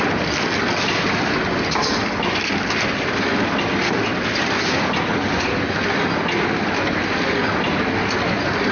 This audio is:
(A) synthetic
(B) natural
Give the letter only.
B